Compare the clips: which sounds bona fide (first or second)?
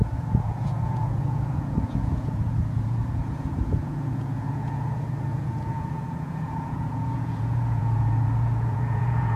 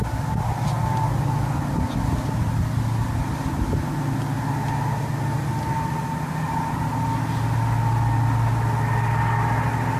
second